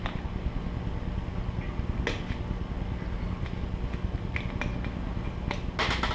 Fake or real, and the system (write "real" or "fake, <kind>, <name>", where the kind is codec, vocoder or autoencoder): real